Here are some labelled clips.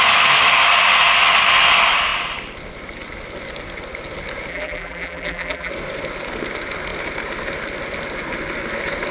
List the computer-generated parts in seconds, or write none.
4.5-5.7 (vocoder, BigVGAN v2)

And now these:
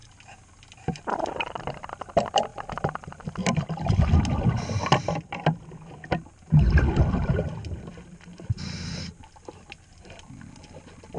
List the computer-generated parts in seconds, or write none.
none

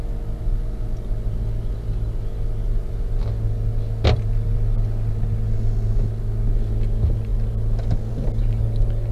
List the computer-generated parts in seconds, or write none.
none